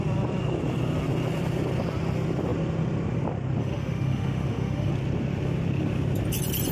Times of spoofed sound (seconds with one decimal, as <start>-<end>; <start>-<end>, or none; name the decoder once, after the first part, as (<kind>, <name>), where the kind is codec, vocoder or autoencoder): 3.6-4.9 (autoencoder, DAC-VAE)

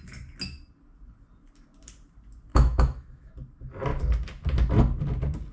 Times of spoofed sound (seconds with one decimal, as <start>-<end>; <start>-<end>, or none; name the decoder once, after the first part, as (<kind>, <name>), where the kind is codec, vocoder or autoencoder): 2.5-3.3 (autoencoder, DAC-VAE)

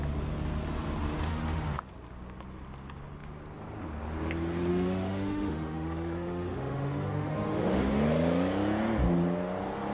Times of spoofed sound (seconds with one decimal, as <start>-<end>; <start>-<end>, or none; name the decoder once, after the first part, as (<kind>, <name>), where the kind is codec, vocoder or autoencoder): 1.3-1.9 (autoencoder, DAC-VAE); 4.7-7.9

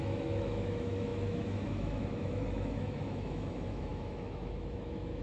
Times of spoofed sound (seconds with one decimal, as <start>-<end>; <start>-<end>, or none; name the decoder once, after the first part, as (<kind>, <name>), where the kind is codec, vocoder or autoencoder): 0.0-5.2 (autoencoder, DAC-VAE)

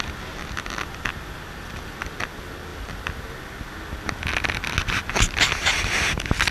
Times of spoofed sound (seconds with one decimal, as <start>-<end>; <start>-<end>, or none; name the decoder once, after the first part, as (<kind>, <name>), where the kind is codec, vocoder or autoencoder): none